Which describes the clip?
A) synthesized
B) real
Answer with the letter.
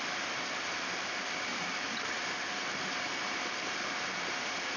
A